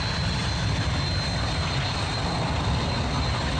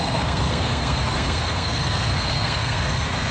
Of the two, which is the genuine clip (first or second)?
first